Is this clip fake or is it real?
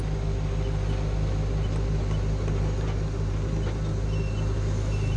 real